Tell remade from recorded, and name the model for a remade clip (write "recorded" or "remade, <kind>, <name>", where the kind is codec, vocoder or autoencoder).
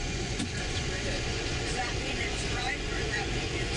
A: remade, vocoder, Vocos